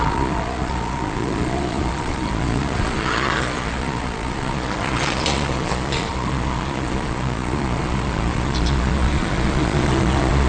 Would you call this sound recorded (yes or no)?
no